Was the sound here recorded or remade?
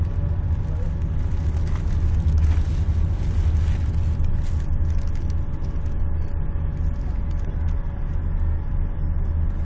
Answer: recorded